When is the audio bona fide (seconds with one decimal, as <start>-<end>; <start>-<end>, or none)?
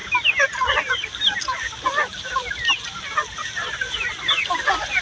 0.0-5.0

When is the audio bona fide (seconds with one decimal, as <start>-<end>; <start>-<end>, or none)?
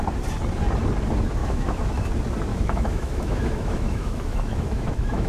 0.0-1.4; 2.1-2.5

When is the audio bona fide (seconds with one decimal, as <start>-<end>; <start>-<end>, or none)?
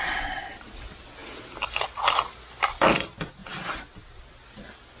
0.0-5.0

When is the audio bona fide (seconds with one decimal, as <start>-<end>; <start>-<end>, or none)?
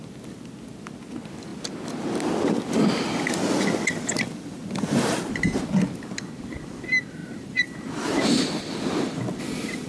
0.0-7.2; 9.4-9.9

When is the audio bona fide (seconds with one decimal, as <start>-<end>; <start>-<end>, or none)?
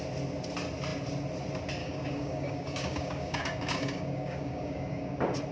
0.0-1.8; 5.1-5.5